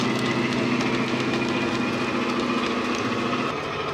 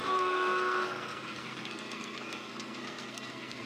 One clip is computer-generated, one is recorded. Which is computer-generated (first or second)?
second